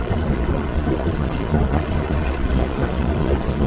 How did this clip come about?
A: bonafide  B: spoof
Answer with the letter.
B